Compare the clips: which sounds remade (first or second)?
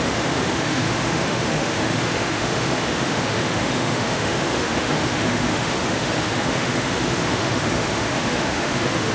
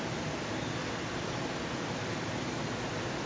first